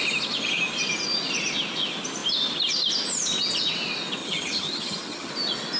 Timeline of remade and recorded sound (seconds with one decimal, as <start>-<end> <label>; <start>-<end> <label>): 0.0-4.2 recorded; 4.2-5.3 remade; 5.3-5.8 recorded